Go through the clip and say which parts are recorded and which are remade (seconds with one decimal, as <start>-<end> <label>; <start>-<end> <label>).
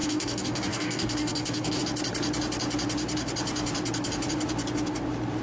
0.0-1.8 remade; 1.8-5.4 recorded